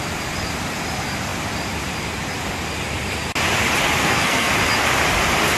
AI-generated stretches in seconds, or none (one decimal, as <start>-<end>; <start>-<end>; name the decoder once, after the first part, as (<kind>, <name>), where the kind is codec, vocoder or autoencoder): 4.0-4.5 (codec, SNAC)